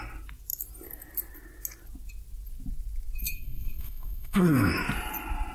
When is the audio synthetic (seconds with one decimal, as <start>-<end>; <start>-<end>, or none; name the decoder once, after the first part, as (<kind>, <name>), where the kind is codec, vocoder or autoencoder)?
3.2-4.7 (codec, SNAC)